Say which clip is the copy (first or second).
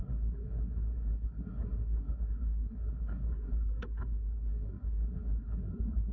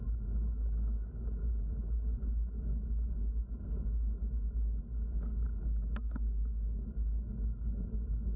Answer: first